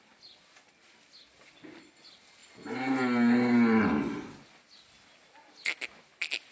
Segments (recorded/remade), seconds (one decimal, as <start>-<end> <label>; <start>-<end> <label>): 0.0-6.5 recorded